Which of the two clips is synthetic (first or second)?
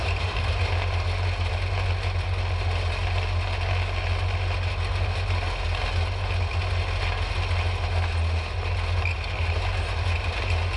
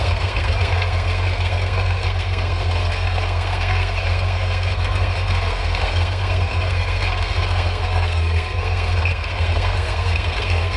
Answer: second